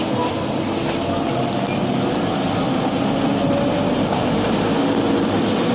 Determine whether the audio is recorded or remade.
recorded